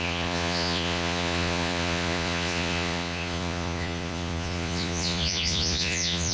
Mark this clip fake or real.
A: fake